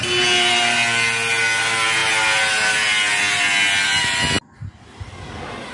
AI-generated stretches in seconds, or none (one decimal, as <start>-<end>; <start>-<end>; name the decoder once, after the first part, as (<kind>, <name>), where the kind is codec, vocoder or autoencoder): none